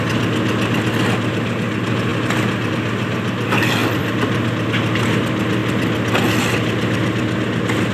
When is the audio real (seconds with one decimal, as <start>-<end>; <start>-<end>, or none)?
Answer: 0.0-3.8; 4.5-7.9